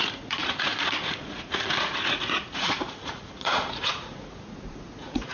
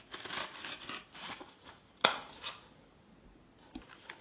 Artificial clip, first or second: first